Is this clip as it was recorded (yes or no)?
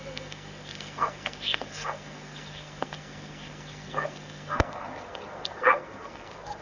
no